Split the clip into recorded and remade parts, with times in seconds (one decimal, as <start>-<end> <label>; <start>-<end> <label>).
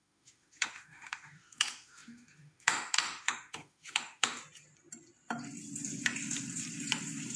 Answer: 0.0-4.4 remade; 4.4-7.4 recorded